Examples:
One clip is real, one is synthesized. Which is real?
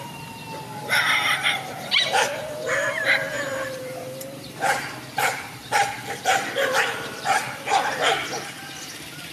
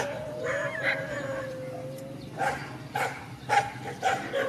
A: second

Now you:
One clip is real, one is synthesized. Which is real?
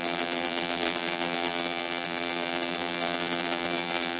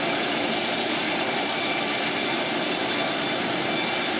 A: second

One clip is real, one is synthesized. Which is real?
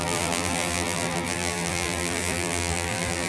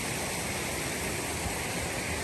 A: second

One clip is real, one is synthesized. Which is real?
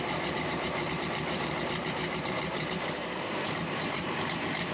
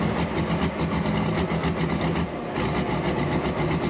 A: second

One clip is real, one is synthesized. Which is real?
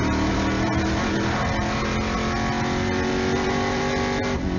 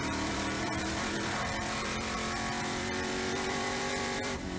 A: first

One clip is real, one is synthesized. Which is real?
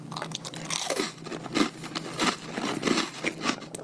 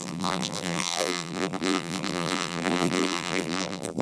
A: first